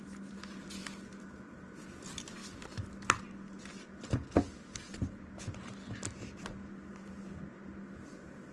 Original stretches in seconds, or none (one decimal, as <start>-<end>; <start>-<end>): 0.0-8.5